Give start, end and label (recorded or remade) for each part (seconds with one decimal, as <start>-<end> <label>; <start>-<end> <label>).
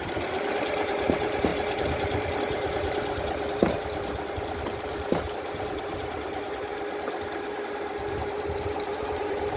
0.0-6.7 remade; 6.7-8.1 recorded; 8.1-9.6 remade